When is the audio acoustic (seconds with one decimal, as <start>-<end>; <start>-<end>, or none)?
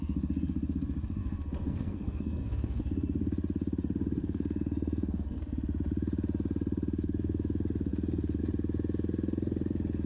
0.0-1.2; 2.8-4.2; 5.4-10.1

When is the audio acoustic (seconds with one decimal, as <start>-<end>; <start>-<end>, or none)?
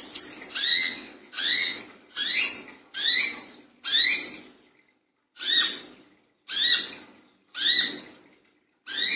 0.0-0.7; 1.8-9.2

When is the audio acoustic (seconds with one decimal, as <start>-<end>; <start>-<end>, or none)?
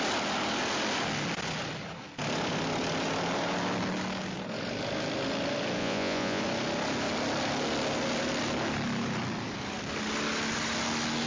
0.0-5.8; 6.4-11.3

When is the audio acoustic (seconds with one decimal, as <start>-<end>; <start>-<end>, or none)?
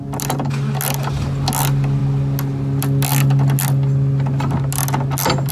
0.0-5.5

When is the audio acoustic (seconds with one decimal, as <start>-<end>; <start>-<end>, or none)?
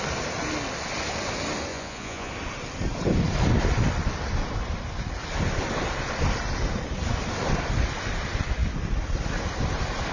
0.0-1.7; 2.3-10.1